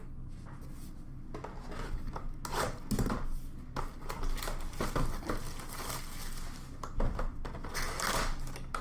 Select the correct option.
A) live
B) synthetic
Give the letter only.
A